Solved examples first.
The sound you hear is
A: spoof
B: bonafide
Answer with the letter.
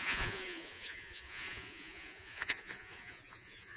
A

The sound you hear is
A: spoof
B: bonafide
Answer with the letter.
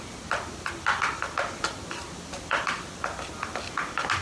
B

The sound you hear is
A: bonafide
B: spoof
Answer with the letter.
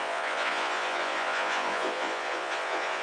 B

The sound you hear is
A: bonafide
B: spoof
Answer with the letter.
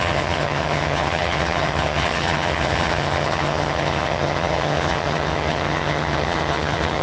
B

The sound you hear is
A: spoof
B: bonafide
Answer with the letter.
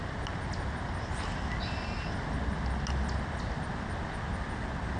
B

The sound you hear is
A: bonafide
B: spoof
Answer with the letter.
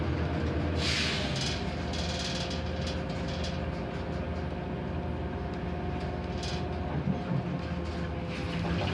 A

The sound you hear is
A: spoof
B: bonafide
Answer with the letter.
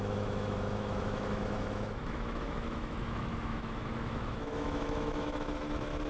A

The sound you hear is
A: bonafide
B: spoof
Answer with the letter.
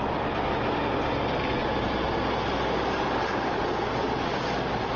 A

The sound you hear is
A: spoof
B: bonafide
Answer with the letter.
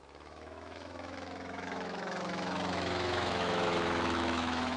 A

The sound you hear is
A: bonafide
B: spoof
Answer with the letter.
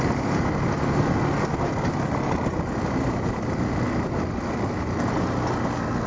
A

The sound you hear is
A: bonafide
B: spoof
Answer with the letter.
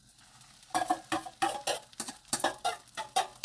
A